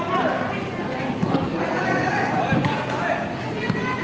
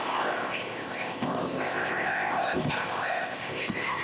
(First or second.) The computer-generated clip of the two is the second